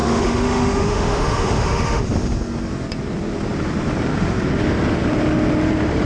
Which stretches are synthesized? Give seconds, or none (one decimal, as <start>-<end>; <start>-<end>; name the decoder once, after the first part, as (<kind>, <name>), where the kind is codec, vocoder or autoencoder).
0.0-2.0 (autoencoder, DAC-VAE)